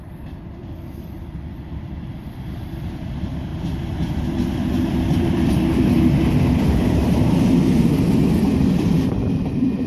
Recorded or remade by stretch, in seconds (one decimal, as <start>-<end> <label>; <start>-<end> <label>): 0.0-3.5 remade; 3.5-4.6 recorded; 4.6-9.9 remade